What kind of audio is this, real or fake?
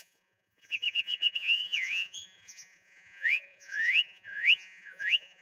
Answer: fake